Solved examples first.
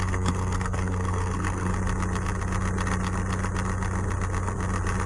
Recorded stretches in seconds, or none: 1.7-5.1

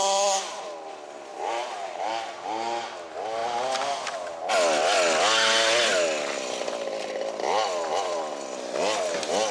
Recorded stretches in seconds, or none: 0.0-1.3; 2.1-9.5

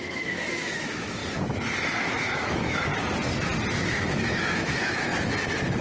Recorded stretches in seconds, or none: 1.2-2.0; 2.9-3.9; 5.1-5.8

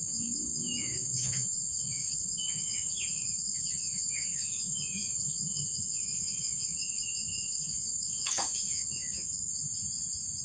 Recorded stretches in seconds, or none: 9.5-10.4